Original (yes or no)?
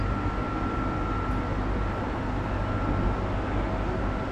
yes